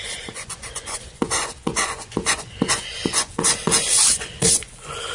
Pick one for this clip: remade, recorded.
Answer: remade